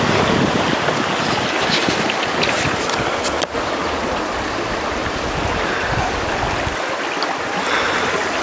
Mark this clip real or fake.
real